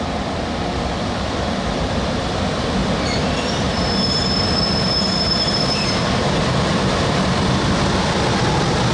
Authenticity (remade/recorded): remade